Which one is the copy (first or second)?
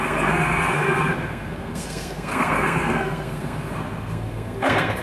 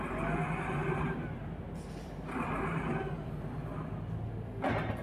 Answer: first